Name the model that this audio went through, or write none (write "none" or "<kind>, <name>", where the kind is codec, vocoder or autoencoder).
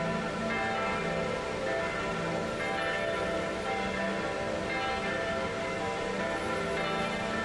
none